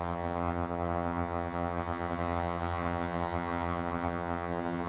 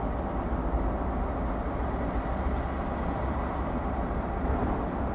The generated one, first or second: first